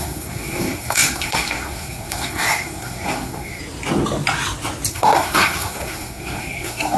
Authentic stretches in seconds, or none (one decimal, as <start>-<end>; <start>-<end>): 3.6-4.9